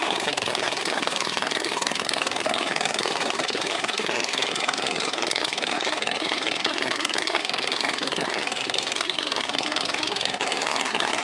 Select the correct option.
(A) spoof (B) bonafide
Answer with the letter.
A